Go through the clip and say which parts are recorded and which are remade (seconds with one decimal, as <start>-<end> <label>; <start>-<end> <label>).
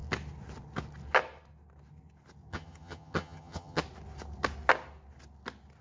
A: 0.0-2.5 recorded; 2.5-3.8 remade; 3.8-5.8 recorded